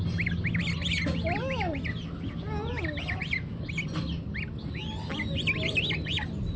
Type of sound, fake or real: real